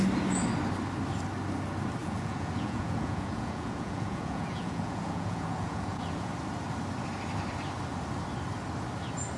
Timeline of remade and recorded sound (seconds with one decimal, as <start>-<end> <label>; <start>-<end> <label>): 0.0-2.0 recorded; 2.0-6.3 remade; 6.3-9.4 recorded